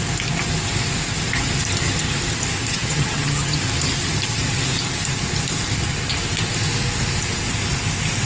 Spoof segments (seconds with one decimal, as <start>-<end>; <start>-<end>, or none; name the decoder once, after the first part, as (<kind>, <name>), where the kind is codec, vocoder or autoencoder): 2.7-3.6 (vocoder, HiFi-GAN)